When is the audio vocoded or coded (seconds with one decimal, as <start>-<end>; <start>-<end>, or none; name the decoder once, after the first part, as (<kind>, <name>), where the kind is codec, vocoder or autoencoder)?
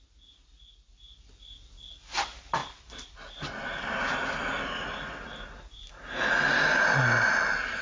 2.6-5.9 (vocoder, BigVGAN v2)